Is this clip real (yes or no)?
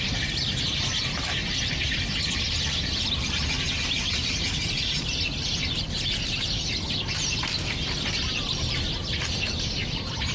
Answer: yes